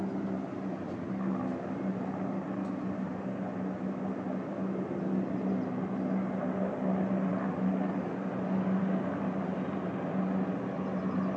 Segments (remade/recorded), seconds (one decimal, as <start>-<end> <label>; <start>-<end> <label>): 0.0-11.4 recorded